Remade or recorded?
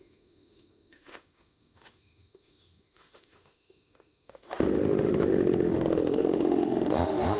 remade